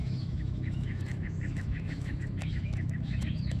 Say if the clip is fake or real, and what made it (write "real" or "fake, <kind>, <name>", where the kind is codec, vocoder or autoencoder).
fake, autoencoder, DAC-VAE